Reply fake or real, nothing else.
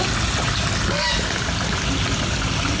real